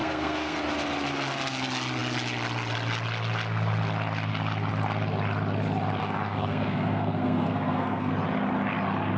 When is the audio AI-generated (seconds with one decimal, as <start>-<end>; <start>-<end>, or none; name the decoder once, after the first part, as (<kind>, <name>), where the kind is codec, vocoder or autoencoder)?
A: 0.0-0.6 (codec, SNAC); 6.0-8.1